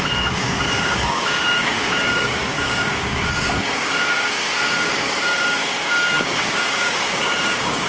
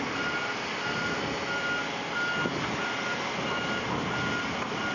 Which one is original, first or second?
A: second